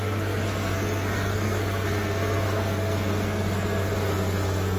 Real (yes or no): no